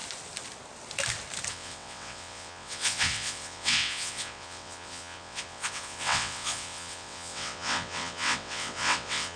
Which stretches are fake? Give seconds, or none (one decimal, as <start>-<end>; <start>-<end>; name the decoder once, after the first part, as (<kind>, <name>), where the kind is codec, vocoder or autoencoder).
1.5-9.4 (vocoder, WaveNeXt)